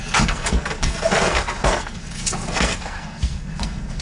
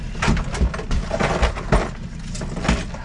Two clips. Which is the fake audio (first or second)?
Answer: first